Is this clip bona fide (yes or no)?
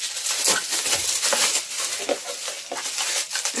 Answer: yes